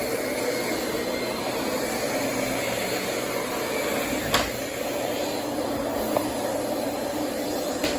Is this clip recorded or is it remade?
recorded